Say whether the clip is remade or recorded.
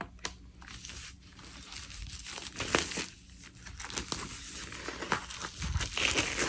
recorded